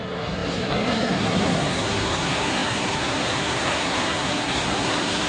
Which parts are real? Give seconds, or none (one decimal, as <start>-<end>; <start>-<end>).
none